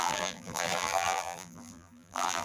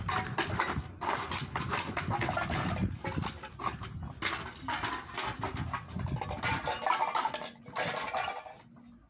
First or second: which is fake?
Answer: first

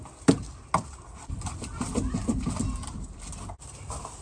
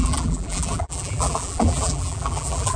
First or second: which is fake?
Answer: second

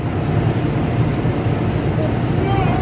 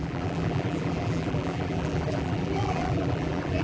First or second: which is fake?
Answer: second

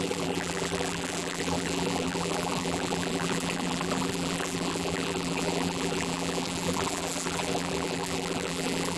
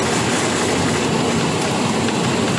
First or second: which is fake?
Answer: first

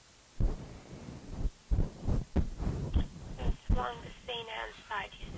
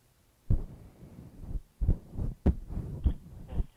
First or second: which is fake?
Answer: second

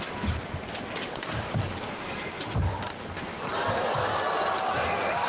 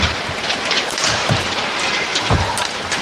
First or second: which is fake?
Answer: second